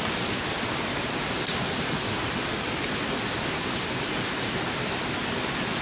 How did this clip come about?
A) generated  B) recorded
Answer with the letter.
B